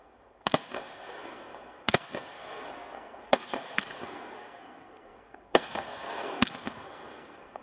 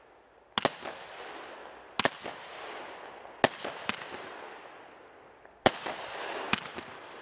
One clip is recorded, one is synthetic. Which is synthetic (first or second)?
first